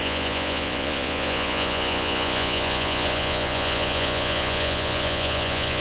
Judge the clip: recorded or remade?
remade